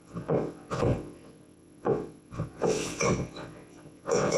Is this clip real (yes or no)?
no